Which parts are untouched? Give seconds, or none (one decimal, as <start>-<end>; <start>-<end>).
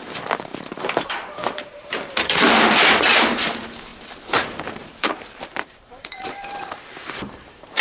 none